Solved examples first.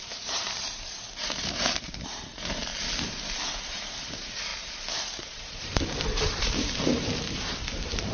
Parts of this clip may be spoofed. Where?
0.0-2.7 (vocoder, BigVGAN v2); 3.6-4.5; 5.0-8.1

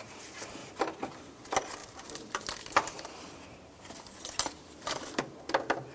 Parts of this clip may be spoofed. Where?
none

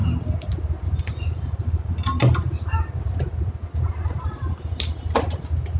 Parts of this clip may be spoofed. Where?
1.1-5.8 (vocoder, BigVGAN v2)

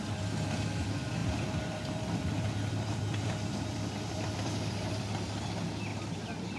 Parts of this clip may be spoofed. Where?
1.2-5.0 (vocoder, BigVGAN v2); 5.9-6.6

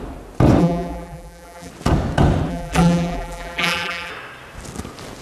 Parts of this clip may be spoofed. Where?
0.6-1.7 (vocoder, BigVGAN v2); 2.5-4.1

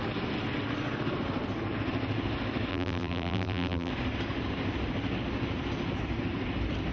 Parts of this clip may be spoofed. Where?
2.7-3.9 (vocoder, BigVGAN v2)

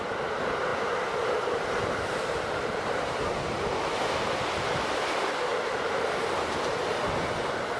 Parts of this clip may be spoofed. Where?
0.7-3.6 (vocoder, BigVGAN v2)

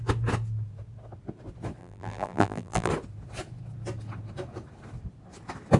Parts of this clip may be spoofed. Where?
1.8-2.9 (vocoder, BigVGAN v2)